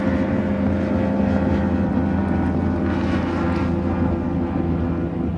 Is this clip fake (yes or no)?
no